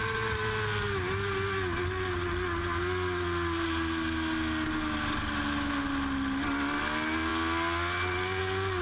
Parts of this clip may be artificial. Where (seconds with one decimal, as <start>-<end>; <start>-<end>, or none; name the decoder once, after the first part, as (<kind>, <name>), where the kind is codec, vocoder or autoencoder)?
none